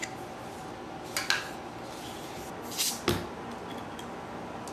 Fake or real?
real